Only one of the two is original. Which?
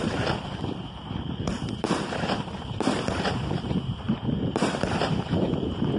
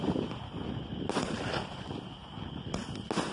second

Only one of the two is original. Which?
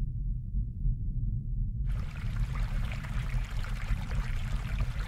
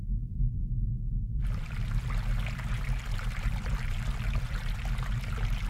second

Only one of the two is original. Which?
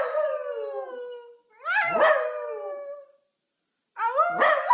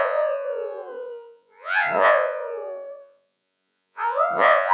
first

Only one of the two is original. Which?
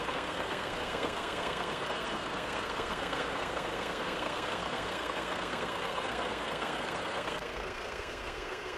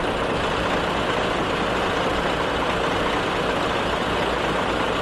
second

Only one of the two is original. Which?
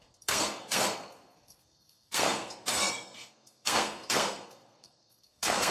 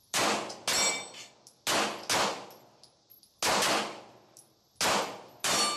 second